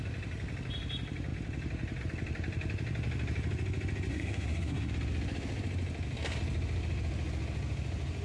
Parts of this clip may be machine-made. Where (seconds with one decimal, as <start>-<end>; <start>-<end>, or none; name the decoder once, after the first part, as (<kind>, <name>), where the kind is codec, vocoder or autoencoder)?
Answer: 4.1-4.9 (codec, SNAC)